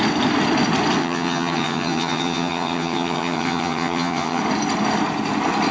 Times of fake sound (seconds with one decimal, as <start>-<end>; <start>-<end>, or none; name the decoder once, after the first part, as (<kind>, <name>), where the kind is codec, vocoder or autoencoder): 1.0-4.4 (vocoder, HiFi-GAN)